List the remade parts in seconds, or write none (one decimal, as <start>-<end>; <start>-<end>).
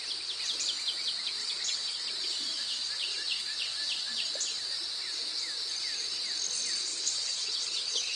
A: 1.4-2.1; 6.9-8.2